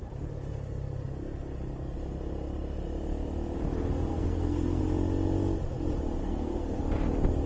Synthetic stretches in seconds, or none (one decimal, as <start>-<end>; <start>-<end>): 4.1-4.8; 6.2-6.8